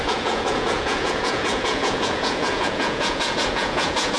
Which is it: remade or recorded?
remade